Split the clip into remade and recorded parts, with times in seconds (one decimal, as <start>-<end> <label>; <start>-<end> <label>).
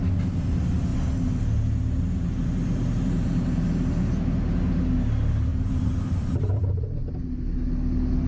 0.0-5.5 recorded; 5.5-7.1 remade; 7.1-8.3 recorded